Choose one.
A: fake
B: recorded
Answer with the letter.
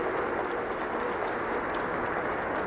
B